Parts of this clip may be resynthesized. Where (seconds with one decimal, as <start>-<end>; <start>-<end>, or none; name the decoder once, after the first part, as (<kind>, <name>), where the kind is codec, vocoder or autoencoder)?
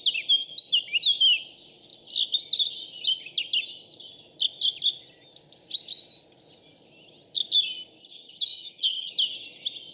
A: 8.0-9.1 (vocoder, HiFi-GAN)